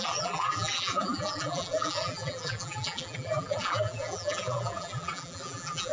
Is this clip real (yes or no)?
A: no